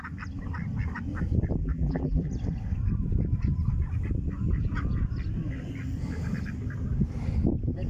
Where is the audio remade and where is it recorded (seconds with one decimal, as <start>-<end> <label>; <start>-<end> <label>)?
0.0-1.6 recorded; 1.6-2.3 remade; 2.3-7.9 recorded